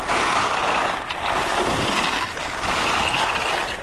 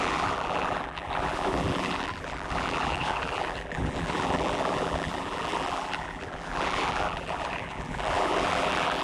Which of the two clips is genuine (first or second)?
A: first